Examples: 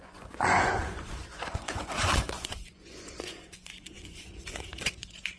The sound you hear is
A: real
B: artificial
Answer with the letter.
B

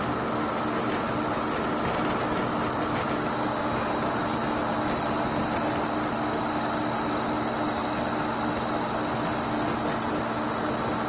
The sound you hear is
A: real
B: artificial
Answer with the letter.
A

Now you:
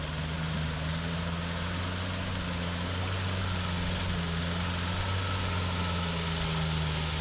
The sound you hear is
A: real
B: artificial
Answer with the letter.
A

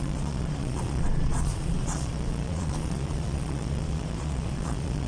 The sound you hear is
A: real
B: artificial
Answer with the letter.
B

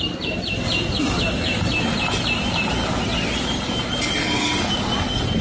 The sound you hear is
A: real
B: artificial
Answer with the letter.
A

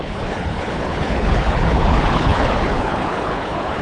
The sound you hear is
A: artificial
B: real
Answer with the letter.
A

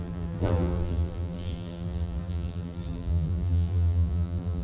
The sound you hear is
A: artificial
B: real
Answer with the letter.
A